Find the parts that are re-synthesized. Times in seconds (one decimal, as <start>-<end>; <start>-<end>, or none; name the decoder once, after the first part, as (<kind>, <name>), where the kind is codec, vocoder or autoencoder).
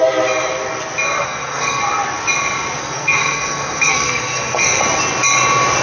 1.2-1.8 (codec, SNAC); 2.8-4.8